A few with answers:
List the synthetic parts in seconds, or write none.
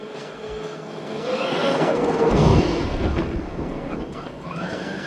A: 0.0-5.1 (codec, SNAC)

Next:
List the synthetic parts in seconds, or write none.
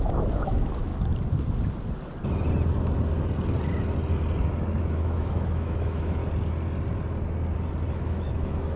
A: 0.0-0.9 (autoencoder, DAC-VAE); 4.8-6.2; 7.9-8.8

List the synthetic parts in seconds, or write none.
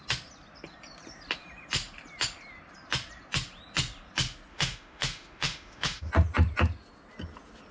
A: 4.5-6.1 (autoencoder, DAC-VAE)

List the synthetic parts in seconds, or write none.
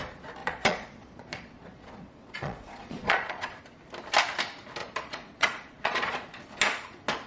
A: 0.4-3.6 (vocoder, Vocos); 4.8-6.4